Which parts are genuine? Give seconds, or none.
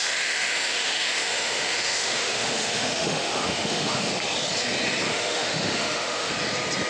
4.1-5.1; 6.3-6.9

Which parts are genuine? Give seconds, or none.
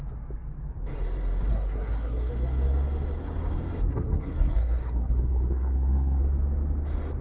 0.0-1.5; 2.3-3.9; 6.2-7.2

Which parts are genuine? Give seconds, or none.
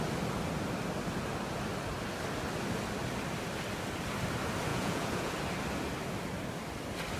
0.0-4.7; 5.3-7.2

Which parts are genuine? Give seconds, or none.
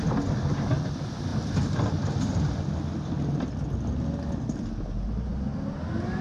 0.0-6.2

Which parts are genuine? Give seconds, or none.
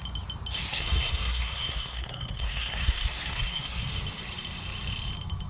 0.0-0.6; 3.9-5.5